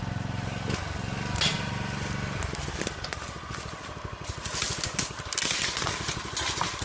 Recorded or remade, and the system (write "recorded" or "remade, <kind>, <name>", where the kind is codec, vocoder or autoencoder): recorded